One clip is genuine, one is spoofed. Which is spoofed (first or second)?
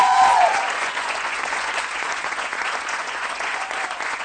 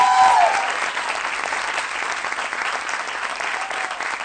first